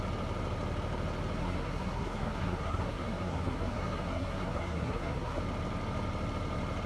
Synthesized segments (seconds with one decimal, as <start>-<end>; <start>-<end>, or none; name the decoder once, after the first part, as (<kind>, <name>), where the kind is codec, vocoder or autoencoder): 1.4-5.4 (codec, SNAC)